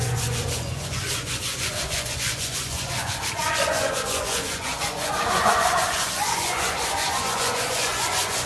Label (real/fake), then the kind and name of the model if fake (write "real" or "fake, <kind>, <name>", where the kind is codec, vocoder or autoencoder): fake, vocoder, Vocos